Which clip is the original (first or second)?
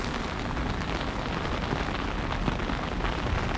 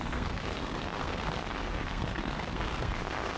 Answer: first